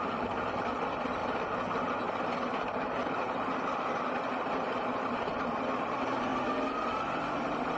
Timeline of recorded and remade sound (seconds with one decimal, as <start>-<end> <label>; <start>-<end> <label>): 0.0-1.2 remade; 1.2-4.5 recorded; 4.5-6.3 remade; 6.3-6.9 recorded; 6.9-7.8 remade